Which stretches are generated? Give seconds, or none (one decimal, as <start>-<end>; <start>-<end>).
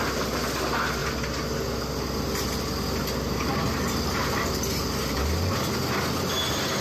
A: none